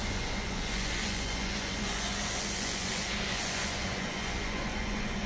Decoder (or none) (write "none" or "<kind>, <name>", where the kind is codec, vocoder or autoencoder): vocoder, Vocos